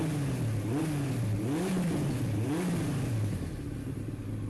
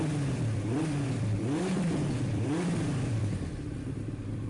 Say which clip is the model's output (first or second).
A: second